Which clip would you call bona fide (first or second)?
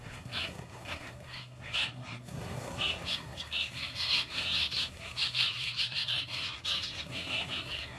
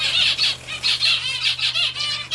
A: second